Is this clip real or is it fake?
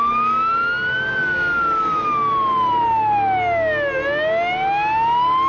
real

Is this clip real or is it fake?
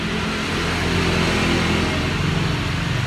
real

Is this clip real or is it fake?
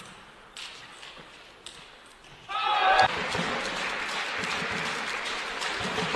real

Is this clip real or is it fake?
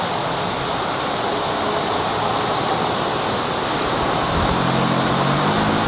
real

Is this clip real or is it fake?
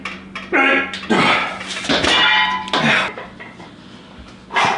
real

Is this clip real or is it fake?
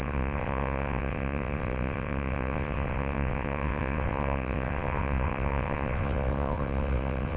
fake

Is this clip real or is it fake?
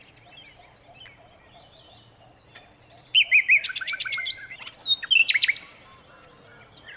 real